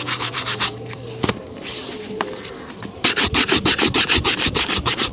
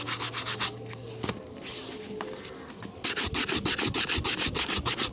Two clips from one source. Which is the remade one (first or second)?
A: first